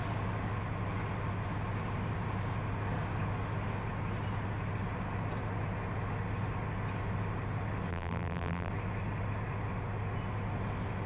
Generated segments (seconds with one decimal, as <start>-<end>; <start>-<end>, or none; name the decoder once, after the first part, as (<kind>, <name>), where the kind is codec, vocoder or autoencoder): 7.9-8.7 (vocoder, BigVGAN v2)